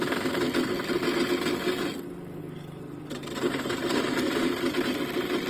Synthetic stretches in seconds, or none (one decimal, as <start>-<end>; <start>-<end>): 2.4-4.6